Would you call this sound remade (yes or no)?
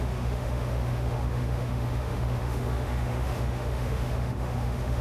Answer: yes